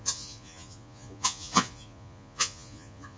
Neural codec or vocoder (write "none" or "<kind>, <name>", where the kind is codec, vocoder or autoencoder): vocoder, Vocos